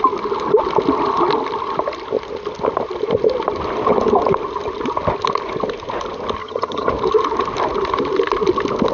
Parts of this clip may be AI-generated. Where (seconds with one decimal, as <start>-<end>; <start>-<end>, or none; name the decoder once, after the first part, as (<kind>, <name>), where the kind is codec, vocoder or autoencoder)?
6.4-6.9 (vocoder, HiFi-GAN)